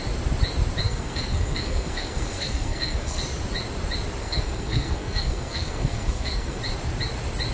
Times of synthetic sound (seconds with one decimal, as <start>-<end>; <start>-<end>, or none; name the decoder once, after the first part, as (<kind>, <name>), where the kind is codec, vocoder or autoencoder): 0.8-3.2 (codec, SNAC); 4.2-6.6